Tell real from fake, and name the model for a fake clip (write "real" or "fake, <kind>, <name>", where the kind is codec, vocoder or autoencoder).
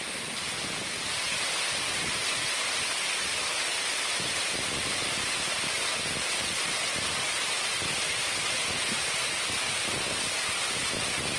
real